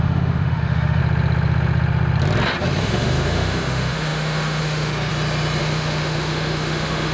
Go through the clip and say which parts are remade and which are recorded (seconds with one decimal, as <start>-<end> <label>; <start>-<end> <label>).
0.0-1.0 remade; 1.0-2.8 recorded; 2.8-5.1 remade; 5.1-5.6 recorded; 5.6-7.1 remade